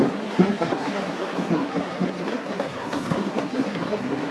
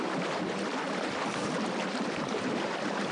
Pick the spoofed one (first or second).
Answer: first